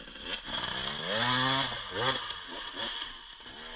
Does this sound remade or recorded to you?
recorded